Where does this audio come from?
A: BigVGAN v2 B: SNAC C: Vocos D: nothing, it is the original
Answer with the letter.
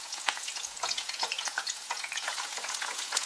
C